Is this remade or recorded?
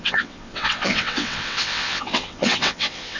remade